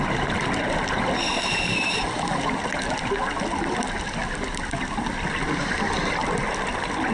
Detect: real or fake real